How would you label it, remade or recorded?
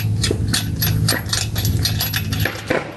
recorded